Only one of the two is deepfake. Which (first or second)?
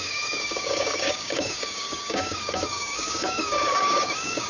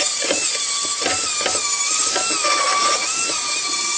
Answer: first